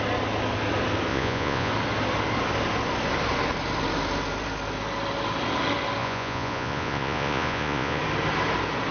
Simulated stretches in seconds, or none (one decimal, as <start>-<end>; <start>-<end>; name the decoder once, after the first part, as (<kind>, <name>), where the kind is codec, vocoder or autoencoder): 1.1-1.7 (vocoder, Vocos); 6.0-8.0

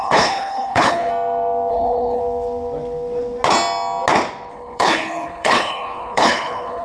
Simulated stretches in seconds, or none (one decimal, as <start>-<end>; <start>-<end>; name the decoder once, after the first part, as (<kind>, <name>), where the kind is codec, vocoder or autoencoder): 0.0-1.1 (codec, HILCodec); 1.7-2.2; 4.5-6.8

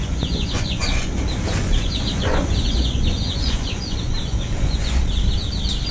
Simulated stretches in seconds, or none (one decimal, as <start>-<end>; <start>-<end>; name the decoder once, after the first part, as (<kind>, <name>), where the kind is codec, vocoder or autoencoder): 0.0-1.1 (vocoder, Vocos); 1.5-5.0

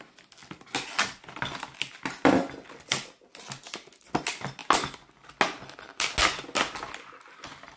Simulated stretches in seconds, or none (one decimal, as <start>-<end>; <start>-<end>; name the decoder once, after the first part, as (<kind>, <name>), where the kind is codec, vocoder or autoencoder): none

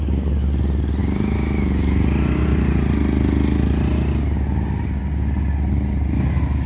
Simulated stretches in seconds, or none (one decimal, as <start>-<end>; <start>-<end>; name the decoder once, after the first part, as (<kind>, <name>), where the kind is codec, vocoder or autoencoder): none

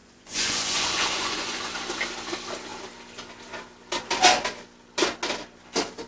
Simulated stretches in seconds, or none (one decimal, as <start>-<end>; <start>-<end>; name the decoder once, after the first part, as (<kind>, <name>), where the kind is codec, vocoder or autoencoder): 0.0-1.7 (vocoder, Vocos)